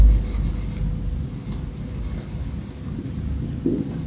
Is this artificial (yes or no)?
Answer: no